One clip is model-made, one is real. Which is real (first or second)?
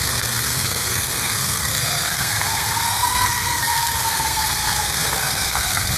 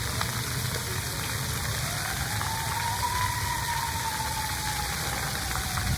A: second